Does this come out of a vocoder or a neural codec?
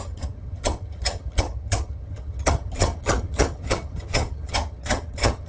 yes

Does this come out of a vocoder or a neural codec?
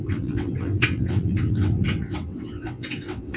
yes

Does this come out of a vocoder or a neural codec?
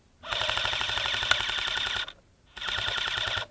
no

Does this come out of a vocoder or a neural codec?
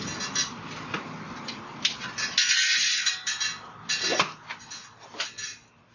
no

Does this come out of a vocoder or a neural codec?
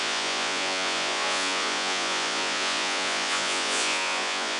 yes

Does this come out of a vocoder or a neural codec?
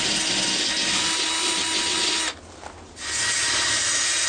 no